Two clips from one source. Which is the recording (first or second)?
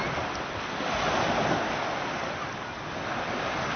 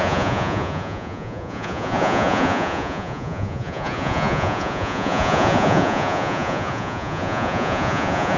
first